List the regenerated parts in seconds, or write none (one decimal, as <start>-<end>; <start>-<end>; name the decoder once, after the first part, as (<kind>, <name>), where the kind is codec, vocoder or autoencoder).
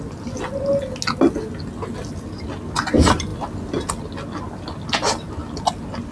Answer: none